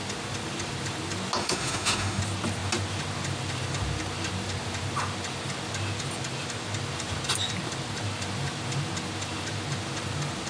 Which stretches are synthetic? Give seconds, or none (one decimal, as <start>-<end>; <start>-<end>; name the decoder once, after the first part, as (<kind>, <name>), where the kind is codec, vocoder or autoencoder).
1.4-2.2 (autoencoder, DAC-VAE)